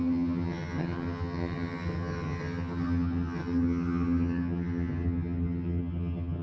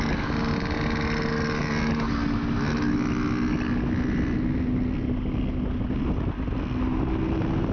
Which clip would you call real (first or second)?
second